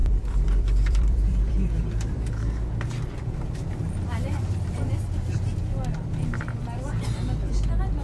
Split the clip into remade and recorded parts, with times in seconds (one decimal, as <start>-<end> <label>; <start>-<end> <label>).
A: 0.0-2.3 remade; 2.3-8.0 recorded